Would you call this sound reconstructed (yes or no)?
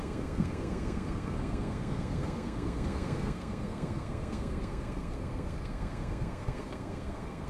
yes